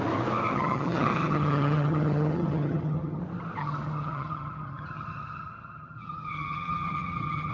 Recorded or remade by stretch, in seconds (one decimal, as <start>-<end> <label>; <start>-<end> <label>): 0.0-0.5 recorded; 0.5-3.2 remade; 3.2-3.6 recorded; 3.6-7.5 remade

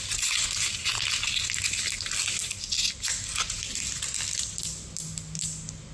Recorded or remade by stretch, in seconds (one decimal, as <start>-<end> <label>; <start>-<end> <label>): 0.0-5.9 recorded

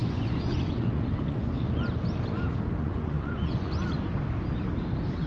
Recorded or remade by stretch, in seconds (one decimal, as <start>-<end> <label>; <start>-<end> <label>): 0.0-1.5 remade; 1.5-2.8 recorded; 2.8-3.7 remade; 3.7-5.3 recorded

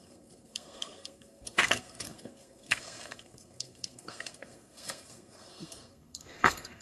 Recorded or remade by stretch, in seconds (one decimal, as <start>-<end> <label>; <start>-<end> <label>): 0.0-6.8 remade

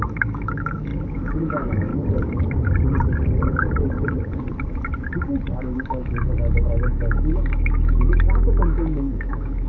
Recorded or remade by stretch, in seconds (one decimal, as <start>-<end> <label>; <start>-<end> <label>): 0.0-0.9 remade; 0.9-1.4 recorded; 1.4-1.9 remade; 1.9-5.6 recorded; 5.6-9.7 remade

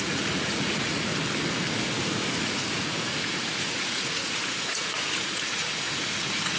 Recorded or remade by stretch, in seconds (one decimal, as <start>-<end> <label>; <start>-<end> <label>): 0.0-1.1 remade; 1.1-2.4 recorded; 2.4-6.6 remade

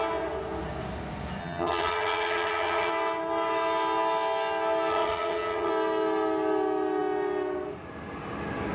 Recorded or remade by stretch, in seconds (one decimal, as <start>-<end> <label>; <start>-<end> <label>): 0.0-1.4 recorded; 1.4-2.9 remade; 2.9-4.9 recorded; 4.9-5.7 remade; 5.7-8.7 recorded